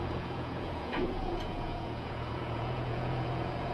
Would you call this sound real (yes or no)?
no